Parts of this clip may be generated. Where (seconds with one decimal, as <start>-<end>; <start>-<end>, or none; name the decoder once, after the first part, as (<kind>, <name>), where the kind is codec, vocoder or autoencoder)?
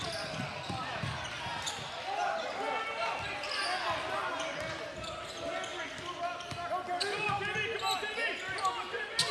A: none